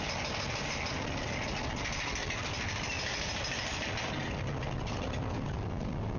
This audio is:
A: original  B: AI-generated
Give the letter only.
A